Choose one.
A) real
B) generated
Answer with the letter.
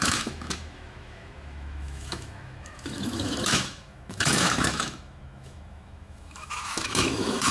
B